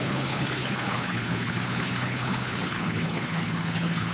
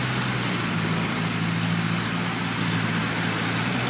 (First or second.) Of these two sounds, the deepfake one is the first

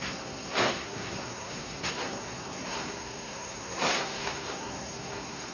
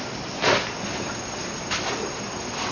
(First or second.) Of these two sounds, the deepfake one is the first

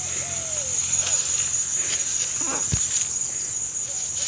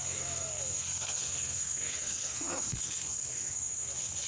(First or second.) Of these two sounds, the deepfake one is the second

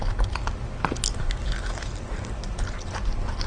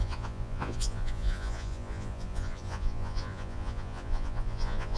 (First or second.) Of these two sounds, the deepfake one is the second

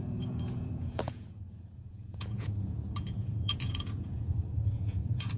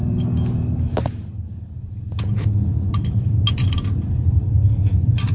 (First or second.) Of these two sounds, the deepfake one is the first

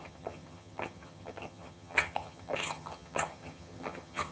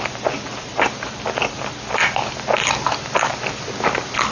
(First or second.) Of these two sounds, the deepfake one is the first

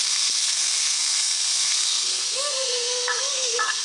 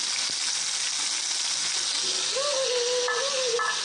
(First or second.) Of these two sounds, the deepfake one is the first